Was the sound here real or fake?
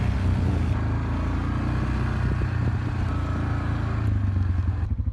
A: real